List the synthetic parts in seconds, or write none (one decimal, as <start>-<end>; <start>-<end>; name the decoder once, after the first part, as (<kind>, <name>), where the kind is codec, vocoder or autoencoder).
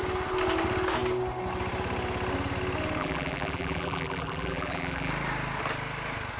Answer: 3.0-5.1 (vocoder, BigVGAN v2)